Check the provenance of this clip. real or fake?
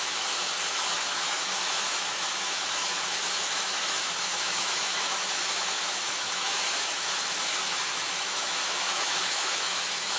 fake